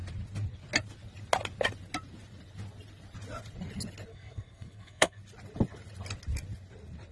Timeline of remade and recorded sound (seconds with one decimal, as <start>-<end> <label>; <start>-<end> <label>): 0.0-4.1 recorded; 4.1-5.2 remade; 5.2-7.1 recorded